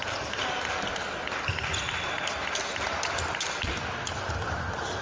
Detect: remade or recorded recorded